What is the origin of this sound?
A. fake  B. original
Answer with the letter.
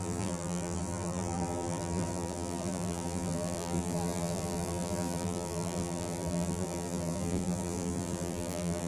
A